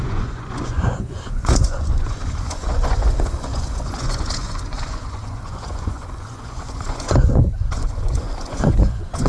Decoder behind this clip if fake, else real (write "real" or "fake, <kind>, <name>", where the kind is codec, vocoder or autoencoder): fake, vocoder, Vocos